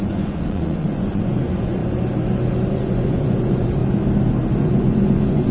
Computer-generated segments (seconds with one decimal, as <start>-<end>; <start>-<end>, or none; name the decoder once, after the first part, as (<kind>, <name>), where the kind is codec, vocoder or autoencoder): 0.0-1.8 (vocoder, Vocos); 2.7-3.8; 4.6-5.5